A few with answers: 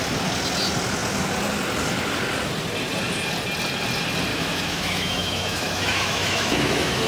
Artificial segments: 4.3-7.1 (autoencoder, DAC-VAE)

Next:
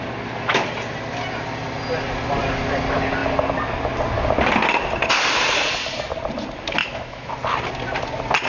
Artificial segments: 6.8-7.3 (autoencoder, DAC-VAE)

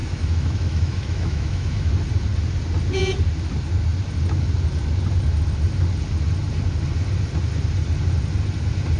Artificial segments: 0.0-1.9 (autoencoder, DAC-VAE)

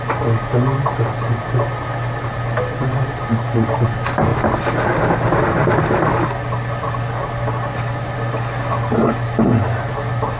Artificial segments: none

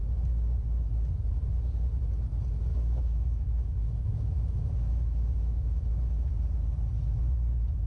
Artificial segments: 2.7-5.9 (autoencoder, DAC-VAE)